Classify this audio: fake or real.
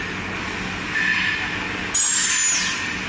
real